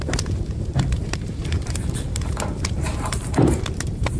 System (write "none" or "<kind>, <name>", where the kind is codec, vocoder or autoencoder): vocoder, BigVGAN v2